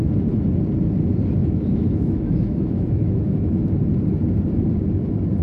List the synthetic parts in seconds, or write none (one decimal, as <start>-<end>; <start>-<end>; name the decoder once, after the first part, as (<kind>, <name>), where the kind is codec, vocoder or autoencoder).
1.4-3.7 (autoencoder, DAC-VAE)

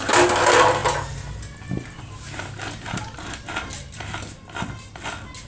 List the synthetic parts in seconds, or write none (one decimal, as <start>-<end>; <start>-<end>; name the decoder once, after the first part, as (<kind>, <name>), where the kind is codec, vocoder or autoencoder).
none

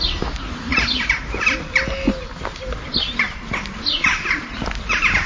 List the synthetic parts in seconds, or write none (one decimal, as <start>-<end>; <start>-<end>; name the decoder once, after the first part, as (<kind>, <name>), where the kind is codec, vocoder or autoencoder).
0.7-1.6 (vocoder, BigVGAN v2)

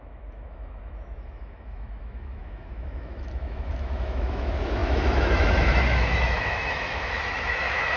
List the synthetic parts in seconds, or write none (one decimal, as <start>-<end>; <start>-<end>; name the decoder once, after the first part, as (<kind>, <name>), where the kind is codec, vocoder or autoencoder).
0.0-8.0 (autoencoder, DAC-VAE)

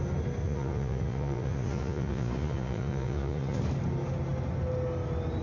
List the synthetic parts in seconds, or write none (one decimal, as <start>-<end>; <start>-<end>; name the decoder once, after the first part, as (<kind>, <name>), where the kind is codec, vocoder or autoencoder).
0.4-3.6 (vocoder, Vocos)

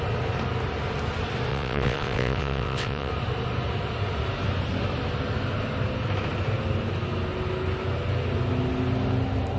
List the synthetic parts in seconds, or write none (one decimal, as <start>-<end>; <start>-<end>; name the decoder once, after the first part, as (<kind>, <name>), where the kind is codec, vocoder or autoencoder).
1.5-3.1 (vocoder, WaveNeXt)

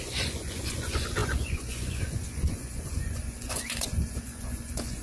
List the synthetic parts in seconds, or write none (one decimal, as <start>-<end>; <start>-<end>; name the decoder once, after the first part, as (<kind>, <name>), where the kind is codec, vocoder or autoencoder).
0.0-5.0 (vocoder, Vocos)